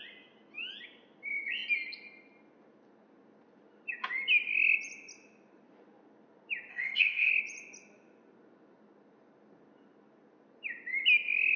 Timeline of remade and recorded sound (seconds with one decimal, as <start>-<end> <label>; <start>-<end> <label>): 0.0-6.7 recorded; 6.7-7.3 remade; 7.3-11.6 recorded